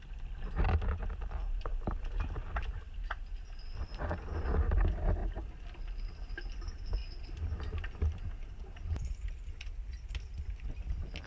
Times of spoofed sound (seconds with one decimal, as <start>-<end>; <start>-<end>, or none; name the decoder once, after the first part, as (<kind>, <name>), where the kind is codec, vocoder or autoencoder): none